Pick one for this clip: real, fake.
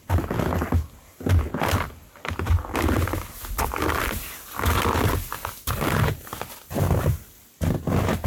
real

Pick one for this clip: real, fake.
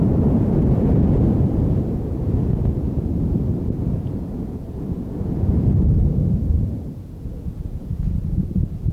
fake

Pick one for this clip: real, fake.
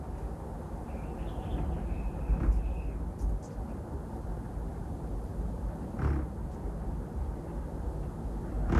real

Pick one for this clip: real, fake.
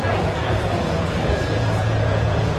fake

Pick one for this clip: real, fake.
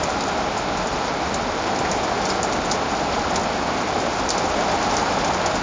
real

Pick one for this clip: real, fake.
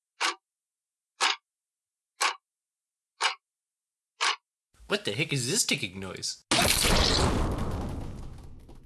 real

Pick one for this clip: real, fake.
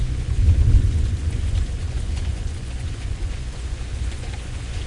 fake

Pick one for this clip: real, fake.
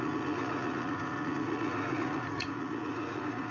fake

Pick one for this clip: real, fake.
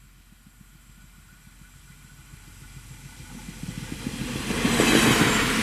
real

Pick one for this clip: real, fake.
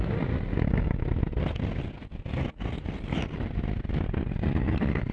real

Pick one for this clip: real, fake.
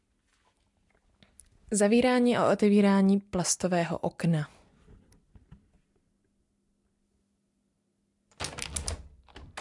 real